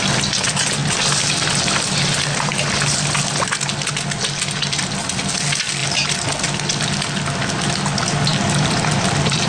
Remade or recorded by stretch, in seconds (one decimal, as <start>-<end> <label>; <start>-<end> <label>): 0.0-5.8 recorded; 5.8-6.6 remade; 6.6-8.3 recorded; 8.3-9.5 remade